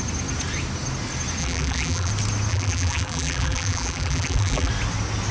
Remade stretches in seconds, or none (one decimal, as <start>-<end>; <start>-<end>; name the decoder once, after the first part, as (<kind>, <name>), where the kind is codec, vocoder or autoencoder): 1.4-2.1 (vocoder, BigVGAN v2); 2.5-4.7